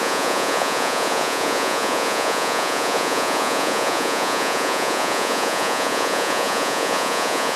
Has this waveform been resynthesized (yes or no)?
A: yes